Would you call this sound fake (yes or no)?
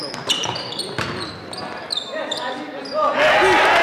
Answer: no